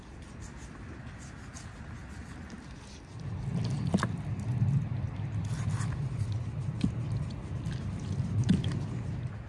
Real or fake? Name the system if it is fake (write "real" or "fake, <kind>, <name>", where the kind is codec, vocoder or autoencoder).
real